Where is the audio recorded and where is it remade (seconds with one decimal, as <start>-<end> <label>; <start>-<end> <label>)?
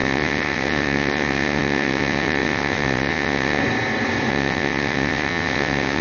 0.0-3.6 remade; 3.6-4.3 recorded; 4.3-6.0 remade